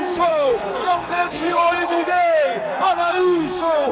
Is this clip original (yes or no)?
no